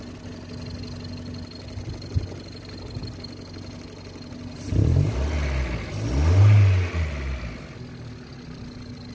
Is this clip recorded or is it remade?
recorded